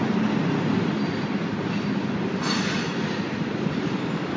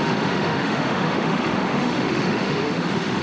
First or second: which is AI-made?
second